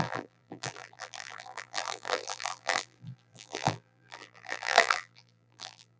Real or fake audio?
fake